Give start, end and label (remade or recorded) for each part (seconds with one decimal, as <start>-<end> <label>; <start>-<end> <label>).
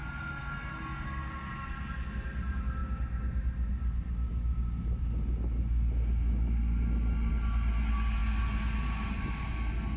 0.0-10.0 recorded